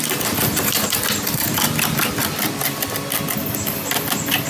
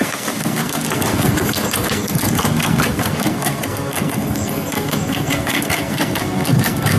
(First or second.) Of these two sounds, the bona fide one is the first